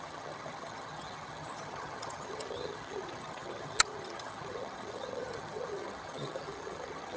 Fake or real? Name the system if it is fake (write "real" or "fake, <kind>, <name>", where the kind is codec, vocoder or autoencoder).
fake, vocoder, HiFi-GAN